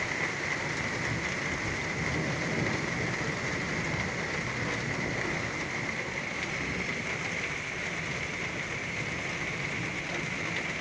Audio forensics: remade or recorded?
recorded